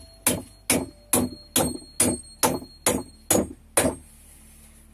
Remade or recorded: recorded